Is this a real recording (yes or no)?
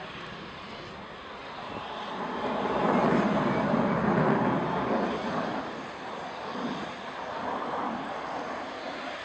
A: yes